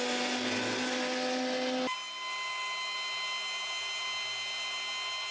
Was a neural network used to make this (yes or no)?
no